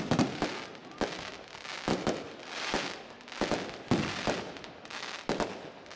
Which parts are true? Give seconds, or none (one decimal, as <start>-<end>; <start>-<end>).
0.0-6.0